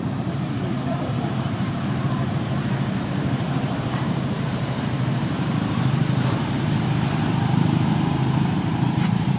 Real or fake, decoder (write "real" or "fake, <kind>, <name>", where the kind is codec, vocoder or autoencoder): fake, vocoder, BigVGAN v2